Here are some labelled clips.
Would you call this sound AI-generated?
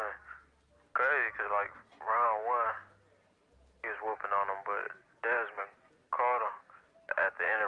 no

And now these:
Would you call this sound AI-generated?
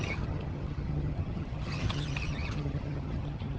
yes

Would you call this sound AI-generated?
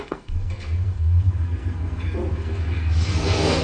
yes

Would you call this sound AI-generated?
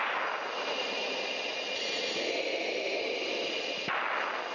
no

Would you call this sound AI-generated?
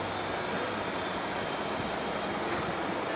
no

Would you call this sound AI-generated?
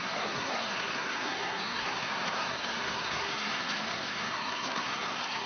yes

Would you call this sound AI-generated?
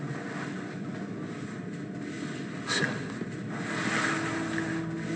no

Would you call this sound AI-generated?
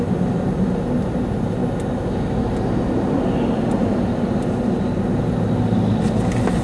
no